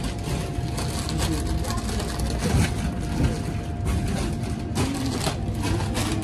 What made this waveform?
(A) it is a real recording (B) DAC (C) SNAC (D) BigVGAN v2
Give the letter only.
A